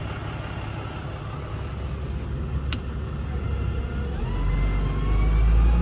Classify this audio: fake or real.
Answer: real